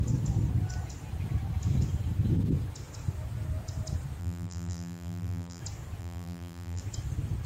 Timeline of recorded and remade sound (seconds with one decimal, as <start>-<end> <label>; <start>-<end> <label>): 0.0-4.2 recorded; 4.2-5.6 remade; 5.6-6.0 recorded; 6.0-6.8 remade; 6.8-7.5 recorded